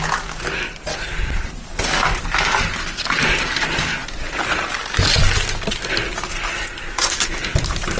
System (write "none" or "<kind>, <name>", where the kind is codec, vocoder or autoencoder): none